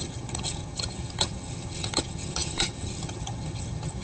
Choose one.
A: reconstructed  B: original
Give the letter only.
A